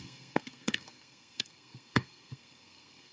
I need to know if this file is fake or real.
fake